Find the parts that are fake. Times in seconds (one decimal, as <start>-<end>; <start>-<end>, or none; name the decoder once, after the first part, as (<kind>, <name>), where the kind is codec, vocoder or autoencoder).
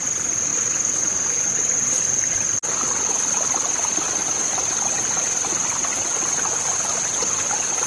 none